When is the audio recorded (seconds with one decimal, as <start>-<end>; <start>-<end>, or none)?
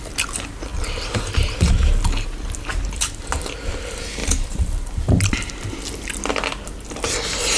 0.0-4.2; 5.7-7.6